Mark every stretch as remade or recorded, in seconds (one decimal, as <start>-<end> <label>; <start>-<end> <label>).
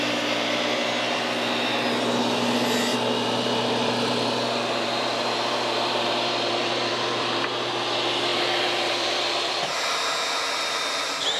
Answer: 0.0-2.9 recorded; 2.9-7.7 remade; 7.7-8.3 recorded; 8.3-9.5 remade; 9.5-11.4 recorded